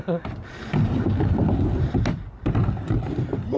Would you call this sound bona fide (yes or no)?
yes